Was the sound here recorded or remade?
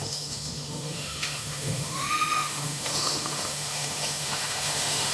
remade